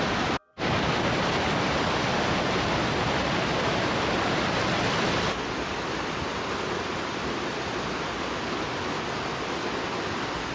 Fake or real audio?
real